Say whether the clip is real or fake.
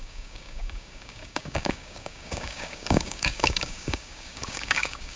fake